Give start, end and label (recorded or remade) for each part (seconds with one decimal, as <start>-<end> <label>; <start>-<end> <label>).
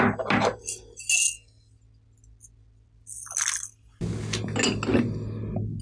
0.0-5.8 recorded